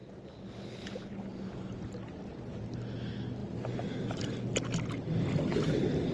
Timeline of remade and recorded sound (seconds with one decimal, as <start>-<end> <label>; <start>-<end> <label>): 0.0-6.1 recorded